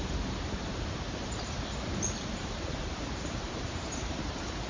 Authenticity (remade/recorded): remade